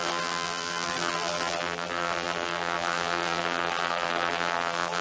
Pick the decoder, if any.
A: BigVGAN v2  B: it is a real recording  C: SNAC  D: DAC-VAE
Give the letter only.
A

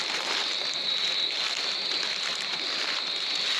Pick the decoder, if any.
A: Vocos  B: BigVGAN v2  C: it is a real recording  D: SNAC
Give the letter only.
C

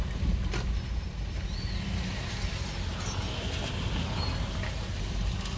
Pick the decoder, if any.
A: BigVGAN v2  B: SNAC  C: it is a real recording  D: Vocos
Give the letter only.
C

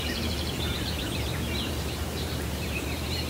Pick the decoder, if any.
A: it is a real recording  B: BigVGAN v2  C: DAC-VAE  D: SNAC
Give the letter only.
B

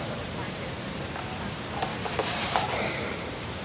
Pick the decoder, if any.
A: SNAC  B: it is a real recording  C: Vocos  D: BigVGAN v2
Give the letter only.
D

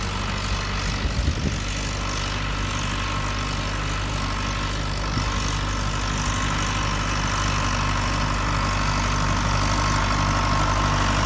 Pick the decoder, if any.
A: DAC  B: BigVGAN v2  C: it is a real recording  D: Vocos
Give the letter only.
C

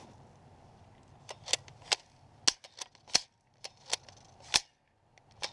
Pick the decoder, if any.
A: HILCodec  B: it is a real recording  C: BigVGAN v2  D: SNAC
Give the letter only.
B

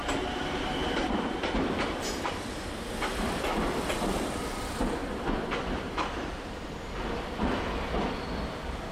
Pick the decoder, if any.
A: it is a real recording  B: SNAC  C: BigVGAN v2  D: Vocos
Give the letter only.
C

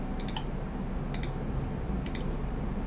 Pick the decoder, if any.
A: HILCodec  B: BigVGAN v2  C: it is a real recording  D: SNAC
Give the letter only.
C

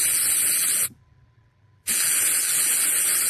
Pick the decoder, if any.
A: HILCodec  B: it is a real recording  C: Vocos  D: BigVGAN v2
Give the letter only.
D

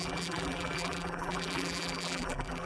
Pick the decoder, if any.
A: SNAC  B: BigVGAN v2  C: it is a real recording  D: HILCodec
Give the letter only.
B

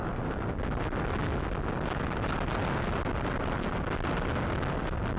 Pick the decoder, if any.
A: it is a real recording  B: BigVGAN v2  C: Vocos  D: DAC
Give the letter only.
A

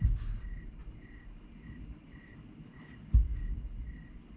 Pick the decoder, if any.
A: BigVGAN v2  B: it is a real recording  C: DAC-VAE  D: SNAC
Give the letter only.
B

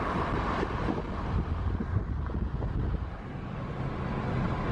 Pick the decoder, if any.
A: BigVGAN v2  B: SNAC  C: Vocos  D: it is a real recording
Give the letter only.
D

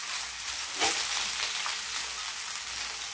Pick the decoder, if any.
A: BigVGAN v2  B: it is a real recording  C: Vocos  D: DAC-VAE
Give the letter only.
B